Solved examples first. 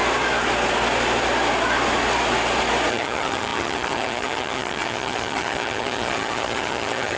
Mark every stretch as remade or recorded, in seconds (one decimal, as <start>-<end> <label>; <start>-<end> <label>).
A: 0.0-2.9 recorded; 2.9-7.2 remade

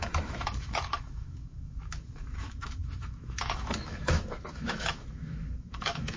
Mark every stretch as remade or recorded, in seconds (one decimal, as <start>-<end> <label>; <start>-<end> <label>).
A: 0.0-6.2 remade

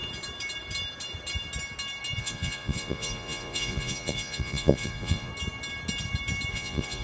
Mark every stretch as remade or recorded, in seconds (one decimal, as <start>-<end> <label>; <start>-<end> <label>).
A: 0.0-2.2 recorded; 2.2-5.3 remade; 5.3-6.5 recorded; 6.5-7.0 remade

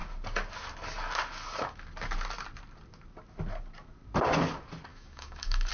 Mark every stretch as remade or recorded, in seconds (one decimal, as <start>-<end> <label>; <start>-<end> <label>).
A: 0.0-4.9 recorded; 4.9-5.7 remade

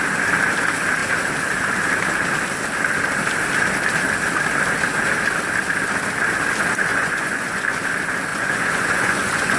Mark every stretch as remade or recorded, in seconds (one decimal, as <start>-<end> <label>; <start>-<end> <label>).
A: 0.0-6.9 recorded; 6.9-7.8 remade; 7.8-8.3 recorded; 8.3-9.6 remade

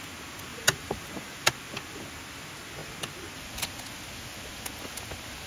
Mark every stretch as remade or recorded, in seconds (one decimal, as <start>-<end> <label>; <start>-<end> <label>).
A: 0.0-0.5 recorded; 0.5-1.5 remade; 1.5-5.5 recorded

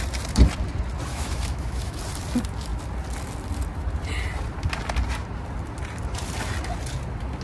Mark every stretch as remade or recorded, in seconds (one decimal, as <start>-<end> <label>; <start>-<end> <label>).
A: 0.0-1.1 recorded; 1.1-2.0 remade; 2.0-7.4 recorded

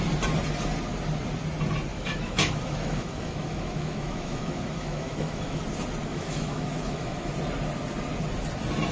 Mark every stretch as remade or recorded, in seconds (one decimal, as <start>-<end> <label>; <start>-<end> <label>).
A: 0.0-1.9 recorded; 1.9-5.6 remade; 5.6-6.1 recorded; 6.1-7.3 remade; 7.3-8.9 recorded